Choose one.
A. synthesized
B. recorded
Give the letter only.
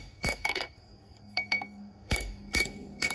A